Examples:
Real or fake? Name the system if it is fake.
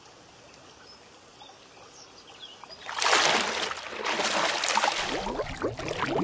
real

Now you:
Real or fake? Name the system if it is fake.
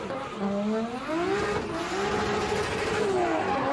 real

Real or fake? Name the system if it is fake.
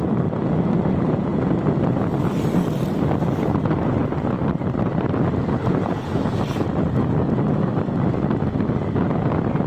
real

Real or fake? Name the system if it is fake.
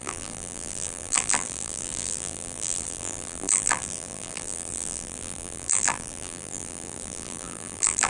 fake, vocoder, BigVGAN v2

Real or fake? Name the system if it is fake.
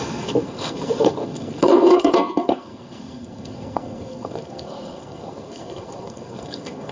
fake, codec, SNAC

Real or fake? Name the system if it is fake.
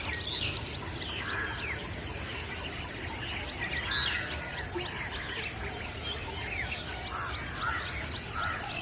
real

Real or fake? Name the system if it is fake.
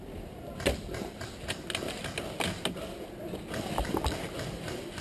real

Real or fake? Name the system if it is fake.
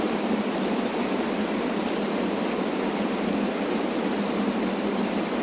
real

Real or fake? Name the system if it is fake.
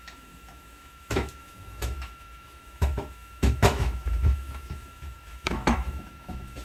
fake, autoencoder, DAC-VAE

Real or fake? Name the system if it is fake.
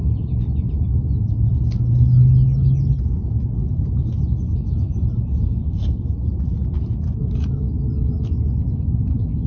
real